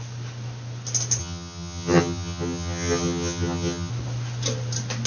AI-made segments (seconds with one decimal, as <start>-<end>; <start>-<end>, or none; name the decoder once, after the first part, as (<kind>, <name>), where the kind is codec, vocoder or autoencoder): 1.2-3.9 (vocoder, HiFi-GAN)